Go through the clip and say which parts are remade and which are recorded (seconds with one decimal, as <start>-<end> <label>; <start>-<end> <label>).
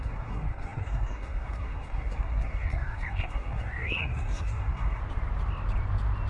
0.0-5.0 remade; 5.0-6.3 recorded